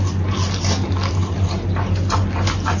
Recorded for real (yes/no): yes